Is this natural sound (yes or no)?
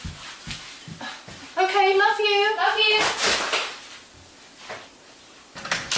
yes